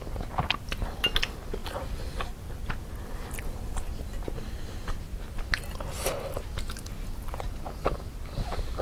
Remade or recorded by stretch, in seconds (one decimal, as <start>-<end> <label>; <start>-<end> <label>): 0.0-1.6 recorded; 1.6-5.0 remade; 5.0-8.8 recorded